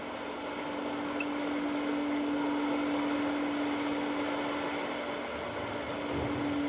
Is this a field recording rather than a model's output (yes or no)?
yes